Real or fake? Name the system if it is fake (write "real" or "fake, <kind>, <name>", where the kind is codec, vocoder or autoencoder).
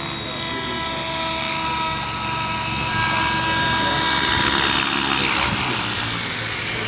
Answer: real